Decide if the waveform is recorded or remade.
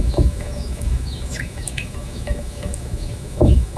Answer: remade